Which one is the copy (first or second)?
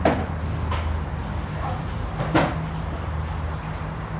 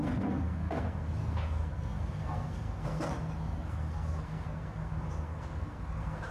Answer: second